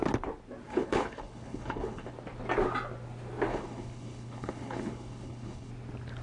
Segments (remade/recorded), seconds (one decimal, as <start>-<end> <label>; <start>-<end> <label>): 0.0-0.7 recorded; 0.7-2.1 remade; 2.1-3.5 recorded; 3.5-5.7 remade; 5.7-6.2 recorded